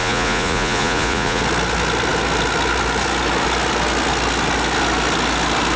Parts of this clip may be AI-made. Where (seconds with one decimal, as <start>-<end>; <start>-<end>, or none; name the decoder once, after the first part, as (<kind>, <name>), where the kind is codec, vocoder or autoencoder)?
0.0-1.4 (vocoder, Vocos)